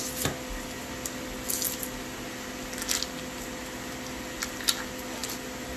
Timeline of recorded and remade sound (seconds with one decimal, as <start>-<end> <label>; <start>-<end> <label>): 0.0-5.8 recorded